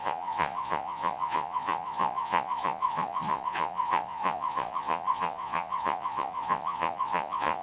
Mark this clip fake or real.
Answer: fake